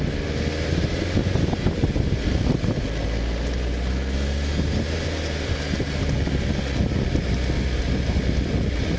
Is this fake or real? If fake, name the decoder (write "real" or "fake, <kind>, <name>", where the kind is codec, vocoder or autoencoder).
real